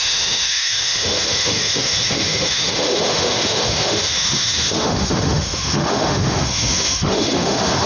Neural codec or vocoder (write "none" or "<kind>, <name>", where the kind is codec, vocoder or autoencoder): autoencoder, DAC-VAE